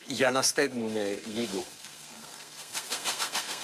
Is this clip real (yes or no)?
no